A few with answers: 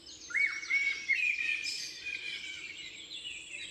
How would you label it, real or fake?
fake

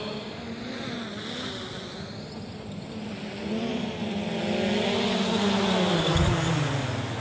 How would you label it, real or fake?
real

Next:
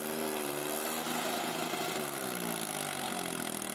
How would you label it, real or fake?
real